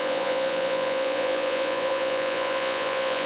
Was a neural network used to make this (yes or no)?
yes